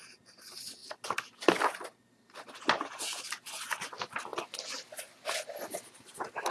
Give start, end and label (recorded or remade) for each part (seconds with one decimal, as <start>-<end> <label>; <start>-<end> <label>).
0.0-6.5 recorded